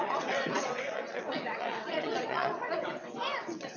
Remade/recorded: remade